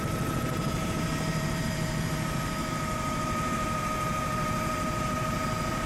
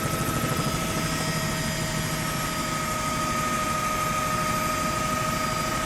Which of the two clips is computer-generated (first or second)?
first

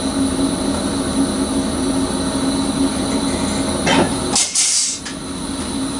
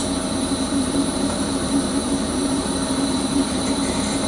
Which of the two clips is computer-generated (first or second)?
second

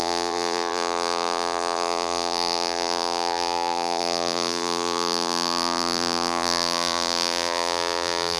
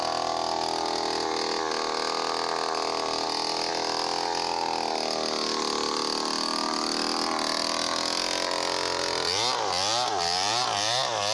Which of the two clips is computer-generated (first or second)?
first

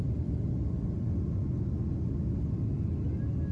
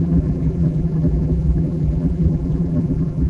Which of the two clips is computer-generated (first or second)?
second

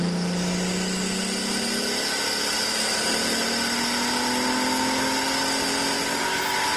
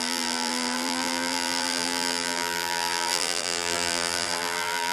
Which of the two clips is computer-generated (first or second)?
second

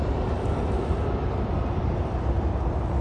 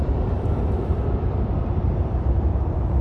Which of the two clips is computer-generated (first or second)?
second